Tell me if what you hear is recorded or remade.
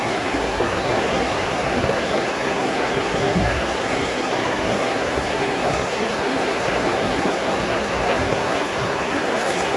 remade